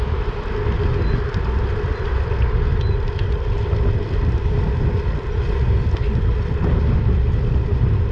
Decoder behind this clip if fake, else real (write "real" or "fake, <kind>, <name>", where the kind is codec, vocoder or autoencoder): real